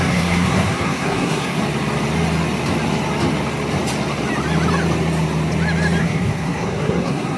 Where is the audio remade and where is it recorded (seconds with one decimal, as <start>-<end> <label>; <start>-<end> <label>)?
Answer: 0.0-1.6 remade; 1.6-6.0 recorded; 6.0-7.4 remade